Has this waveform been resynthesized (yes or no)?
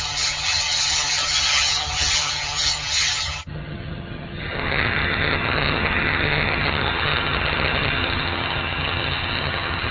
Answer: yes